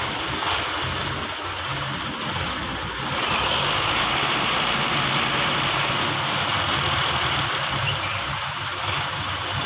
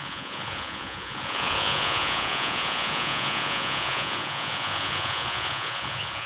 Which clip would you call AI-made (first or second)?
second